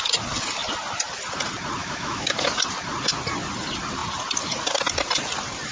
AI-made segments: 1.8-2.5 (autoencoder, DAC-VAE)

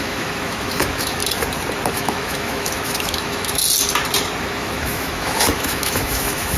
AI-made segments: 0.0-1.2 (autoencoder, DAC-VAE); 1.9-3.6; 4.4-6.6